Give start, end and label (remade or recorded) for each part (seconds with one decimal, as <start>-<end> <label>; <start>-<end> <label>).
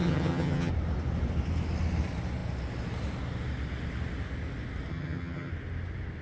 0.0-0.7 remade; 0.7-4.9 recorded; 4.9-5.5 remade; 5.5-6.2 recorded